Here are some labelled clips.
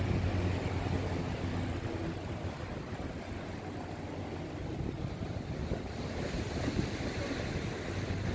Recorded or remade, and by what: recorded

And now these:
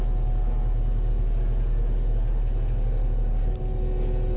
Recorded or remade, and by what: recorded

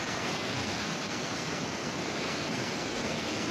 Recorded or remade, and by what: remade, codec, SNAC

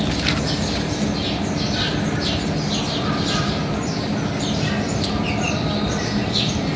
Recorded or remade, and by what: recorded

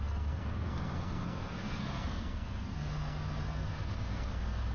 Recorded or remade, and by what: remade, codec, SNAC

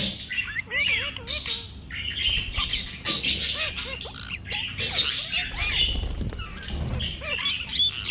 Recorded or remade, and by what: recorded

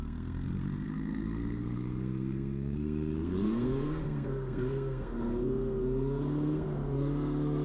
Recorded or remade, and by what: remade, codec, SNAC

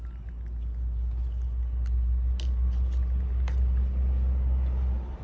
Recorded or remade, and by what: recorded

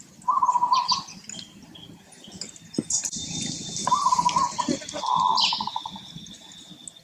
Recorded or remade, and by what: recorded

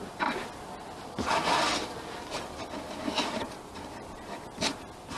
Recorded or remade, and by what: recorded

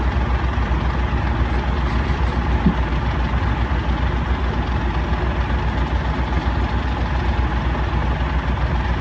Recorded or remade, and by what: recorded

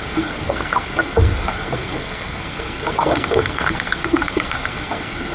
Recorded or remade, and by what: remade, codec, SNAC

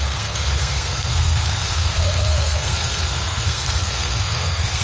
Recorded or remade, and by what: remade, codec, SNAC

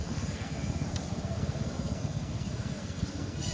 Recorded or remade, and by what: remade, codec, SNAC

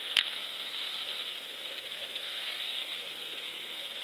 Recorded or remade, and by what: remade, codec, SNAC